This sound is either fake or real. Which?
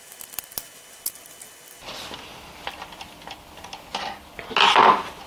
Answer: real